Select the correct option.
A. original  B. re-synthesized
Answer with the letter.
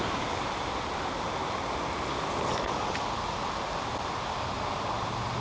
A